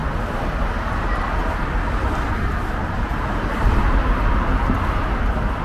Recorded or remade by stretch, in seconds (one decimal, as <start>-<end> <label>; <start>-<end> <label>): 0.0-3.1 recorded; 3.1-3.8 remade; 3.8-5.6 recorded